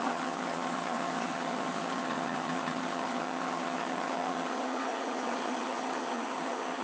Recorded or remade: remade